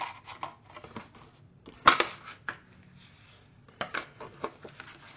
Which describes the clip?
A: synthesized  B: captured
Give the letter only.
B